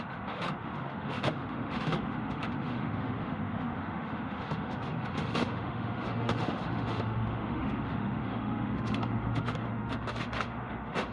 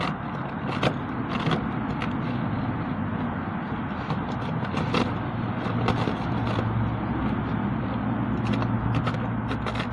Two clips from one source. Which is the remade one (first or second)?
first